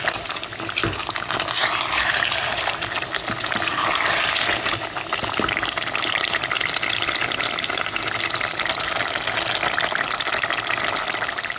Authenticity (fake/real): real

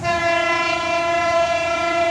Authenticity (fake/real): fake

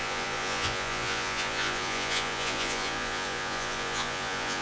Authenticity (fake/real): fake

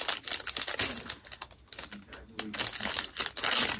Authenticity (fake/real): real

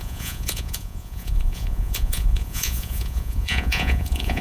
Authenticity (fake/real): fake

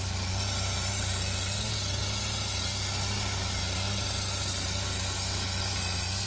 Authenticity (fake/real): real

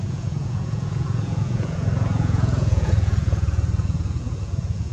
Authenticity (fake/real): fake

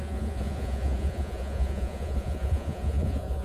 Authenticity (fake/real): fake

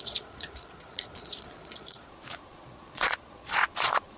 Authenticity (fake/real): fake